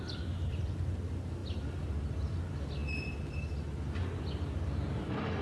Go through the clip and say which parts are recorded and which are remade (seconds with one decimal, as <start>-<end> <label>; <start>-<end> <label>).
0.0-5.4 recorded